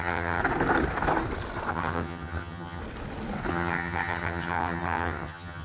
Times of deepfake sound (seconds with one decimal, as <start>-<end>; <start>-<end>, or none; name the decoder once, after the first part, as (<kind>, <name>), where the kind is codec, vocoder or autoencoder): 0.0-0.4 (vocoder, HiFi-GAN); 1.7-2.8; 3.5-5.6